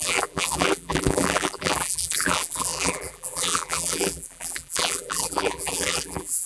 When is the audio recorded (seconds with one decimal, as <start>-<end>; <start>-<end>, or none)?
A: none